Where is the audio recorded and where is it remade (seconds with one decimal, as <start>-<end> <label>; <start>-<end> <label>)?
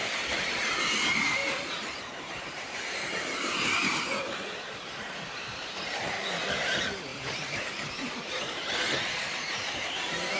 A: 0.0-0.5 remade; 0.5-1.4 recorded; 1.4-5.9 remade; 5.9-7.1 recorded; 7.1-8.3 remade; 8.3-10.4 recorded